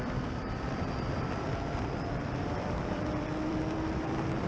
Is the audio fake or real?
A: fake